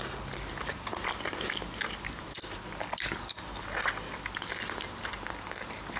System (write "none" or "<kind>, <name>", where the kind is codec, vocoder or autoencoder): none